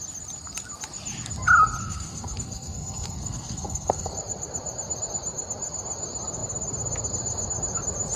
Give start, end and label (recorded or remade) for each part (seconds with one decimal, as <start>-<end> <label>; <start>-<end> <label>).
0.0-1.8 recorded; 1.8-4.1 remade; 4.1-8.2 recorded